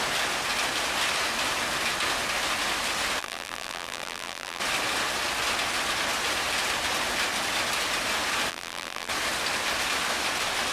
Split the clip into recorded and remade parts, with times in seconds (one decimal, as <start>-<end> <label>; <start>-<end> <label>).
0.0-3.2 recorded; 3.2-4.6 remade; 4.6-8.5 recorded; 8.5-9.1 remade; 9.1-10.7 recorded